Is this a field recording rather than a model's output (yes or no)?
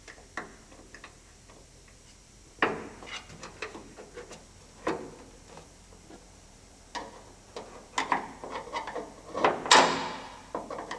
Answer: yes